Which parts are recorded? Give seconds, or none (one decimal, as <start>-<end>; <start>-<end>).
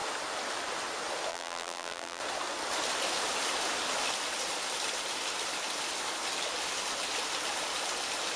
0.0-1.3; 2.2-8.4